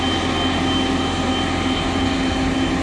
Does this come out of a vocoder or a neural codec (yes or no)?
no